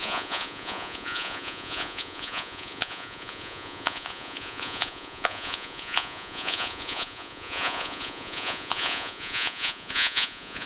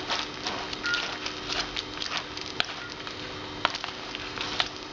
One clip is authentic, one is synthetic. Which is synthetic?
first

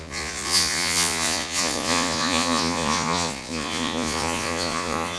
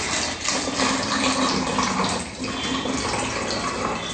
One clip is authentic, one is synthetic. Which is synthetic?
first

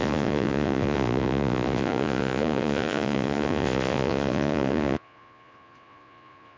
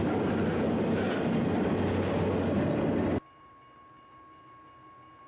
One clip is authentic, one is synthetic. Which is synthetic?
first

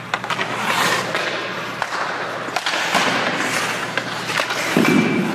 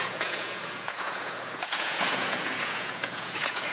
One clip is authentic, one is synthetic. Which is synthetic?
second